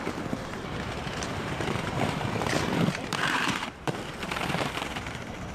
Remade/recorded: remade